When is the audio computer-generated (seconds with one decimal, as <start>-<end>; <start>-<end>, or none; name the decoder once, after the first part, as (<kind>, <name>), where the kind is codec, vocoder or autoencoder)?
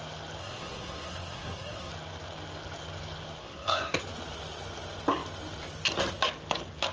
0.4-1.9 (codec, SNAC); 3.4-4.0